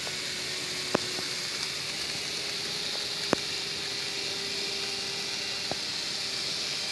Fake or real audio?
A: real